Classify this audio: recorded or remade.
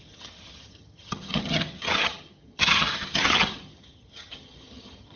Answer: remade